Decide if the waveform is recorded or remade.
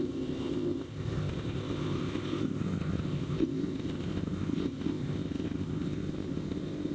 remade